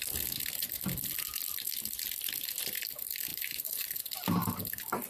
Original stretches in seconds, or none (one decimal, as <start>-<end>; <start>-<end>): 0.0-3.3; 4.0-5.1